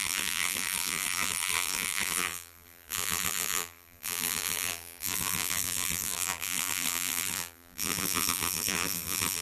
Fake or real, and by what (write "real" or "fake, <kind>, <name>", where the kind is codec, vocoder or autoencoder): fake, vocoder, BigVGAN v2